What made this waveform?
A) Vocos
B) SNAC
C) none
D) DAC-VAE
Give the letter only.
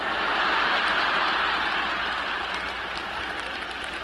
C